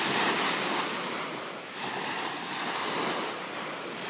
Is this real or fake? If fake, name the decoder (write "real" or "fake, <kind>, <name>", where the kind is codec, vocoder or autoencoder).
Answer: real